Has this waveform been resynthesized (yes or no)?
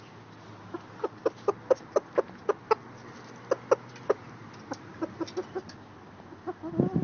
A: no